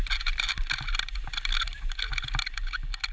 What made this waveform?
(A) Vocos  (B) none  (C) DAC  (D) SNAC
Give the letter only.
B